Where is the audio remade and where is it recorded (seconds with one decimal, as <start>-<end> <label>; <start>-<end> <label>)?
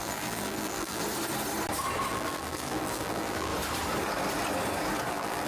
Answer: 0.0-1.0 remade; 1.0-2.1 recorded; 2.1-3.5 remade; 3.5-5.1 recorded; 5.1-5.5 remade